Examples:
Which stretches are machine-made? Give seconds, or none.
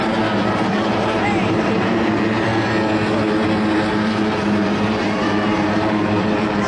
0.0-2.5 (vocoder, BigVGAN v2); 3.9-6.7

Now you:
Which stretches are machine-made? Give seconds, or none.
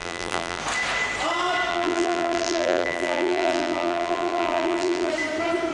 0.0-0.6 (vocoder, BigVGAN v2); 1.7-5.1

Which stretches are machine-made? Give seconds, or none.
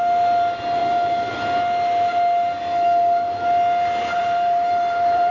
0.8-1.3 (vocoder, BigVGAN v2); 4.2-5.3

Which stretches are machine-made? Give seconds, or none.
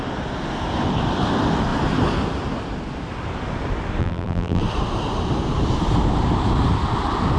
4.0-4.6 (vocoder, BigVGAN v2)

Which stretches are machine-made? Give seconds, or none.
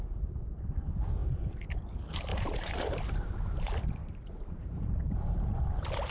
2.3-3.6 (vocoder, BigVGAN v2); 4.0-5.1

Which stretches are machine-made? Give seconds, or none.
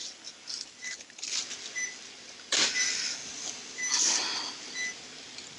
none